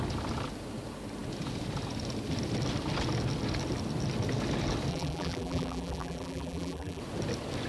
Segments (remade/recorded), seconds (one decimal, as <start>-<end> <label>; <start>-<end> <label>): 0.0-4.9 recorded; 4.9-7.0 remade; 7.0-7.7 recorded